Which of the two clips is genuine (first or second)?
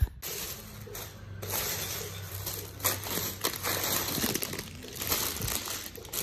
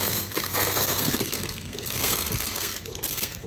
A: first